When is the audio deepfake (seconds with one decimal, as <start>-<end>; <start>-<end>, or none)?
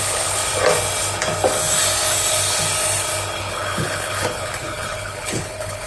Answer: 0.0-0.4; 3.4-5.9